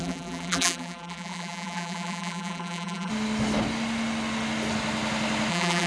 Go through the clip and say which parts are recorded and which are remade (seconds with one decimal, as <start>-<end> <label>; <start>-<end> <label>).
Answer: 0.0-3.1 remade; 3.1-5.5 recorded; 5.5-5.9 remade